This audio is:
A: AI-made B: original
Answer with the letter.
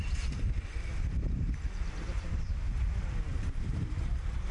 A